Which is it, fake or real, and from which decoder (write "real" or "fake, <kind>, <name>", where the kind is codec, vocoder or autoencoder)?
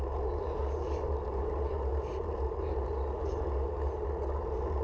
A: real